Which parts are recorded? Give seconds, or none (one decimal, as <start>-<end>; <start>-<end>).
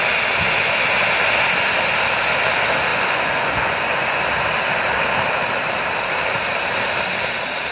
0.0-2.9; 4.2-7.7